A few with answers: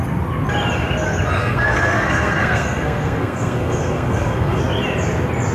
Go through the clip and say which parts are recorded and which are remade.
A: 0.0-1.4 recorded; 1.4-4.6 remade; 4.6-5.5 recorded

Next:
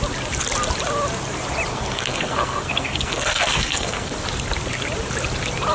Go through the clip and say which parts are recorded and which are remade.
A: 0.0-1.7 recorded; 1.7-4.1 remade; 4.1-5.7 recorded

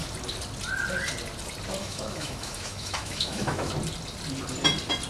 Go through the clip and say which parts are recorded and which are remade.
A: 0.0-1.8 recorded; 1.8-3.7 remade; 3.7-5.1 recorded

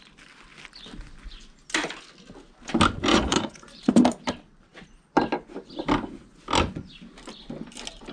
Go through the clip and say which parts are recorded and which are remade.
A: 0.0-3.1 recorded; 3.1-3.9 remade; 3.9-8.1 recorded

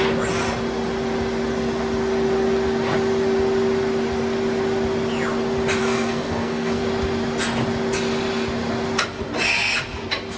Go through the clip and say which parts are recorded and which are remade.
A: 0.0-5.8 recorded; 5.8-6.8 remade; 6.8-10.4 recorded

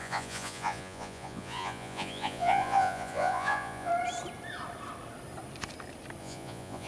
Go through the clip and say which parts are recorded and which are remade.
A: 0.0-3.9 remade; 3.9-6.2 recorded; 6.2-6.9 remade

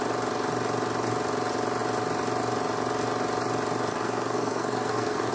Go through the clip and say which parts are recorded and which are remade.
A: 0.0-3.9 recorded; 3.9-5.3 remade

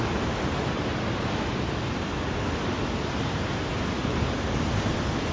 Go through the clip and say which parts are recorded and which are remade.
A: 0.0-0.9 remade; 0.9-3.2 recorded; 3.2-5.3 remade